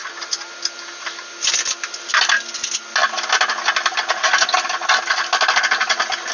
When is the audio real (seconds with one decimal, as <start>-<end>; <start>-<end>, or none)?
0.0-6.3